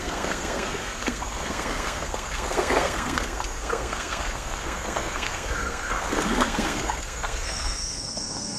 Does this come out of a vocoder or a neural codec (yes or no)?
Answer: yes